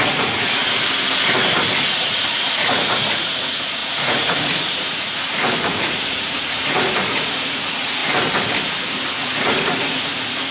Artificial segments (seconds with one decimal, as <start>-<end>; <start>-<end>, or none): 0.0-0.6; 1.9-8.0; 9.2-10.5